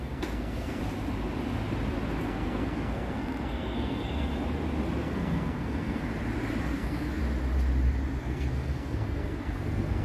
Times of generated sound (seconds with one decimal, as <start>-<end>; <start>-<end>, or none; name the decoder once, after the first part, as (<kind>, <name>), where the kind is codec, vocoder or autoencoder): 0.0-0.8 (codec, SNAC); 2.2-4.3; 5.0-6.1; 6.6-7.2; 8.2-10.0